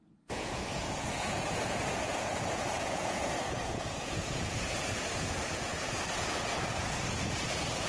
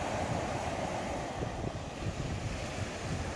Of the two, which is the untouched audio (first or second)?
second